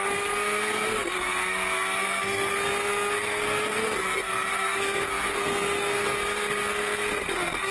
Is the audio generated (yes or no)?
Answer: yes